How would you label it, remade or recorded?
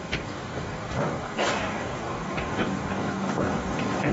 remade